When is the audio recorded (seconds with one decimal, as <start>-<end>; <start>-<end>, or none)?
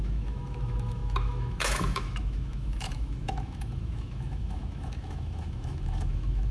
none